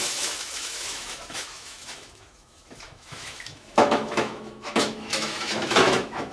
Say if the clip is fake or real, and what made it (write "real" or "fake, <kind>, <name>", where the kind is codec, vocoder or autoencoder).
fake, autoencoder, DAC-VAE